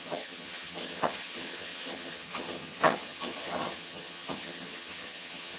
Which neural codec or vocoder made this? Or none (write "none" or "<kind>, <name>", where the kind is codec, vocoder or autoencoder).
vocoder, HiFi-GAN